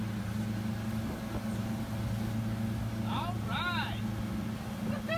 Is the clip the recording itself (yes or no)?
yes